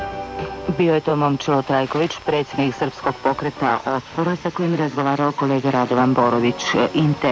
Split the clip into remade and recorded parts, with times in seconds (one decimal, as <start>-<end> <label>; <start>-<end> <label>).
0.0-3.7 recorded; 3.7-6.0 remade; 6.0-7.3 recorded